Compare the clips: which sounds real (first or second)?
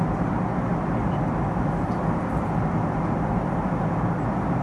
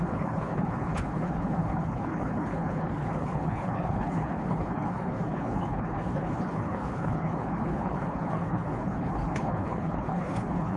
first